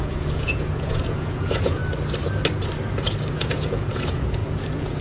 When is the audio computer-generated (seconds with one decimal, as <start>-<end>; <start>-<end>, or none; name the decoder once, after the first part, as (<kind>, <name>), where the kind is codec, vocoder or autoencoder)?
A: 0.0-1.8 (vocoder, Vocos); 3.3-5.0

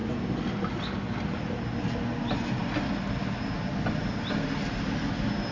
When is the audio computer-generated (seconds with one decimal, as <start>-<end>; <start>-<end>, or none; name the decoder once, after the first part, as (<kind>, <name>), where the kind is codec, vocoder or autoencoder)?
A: none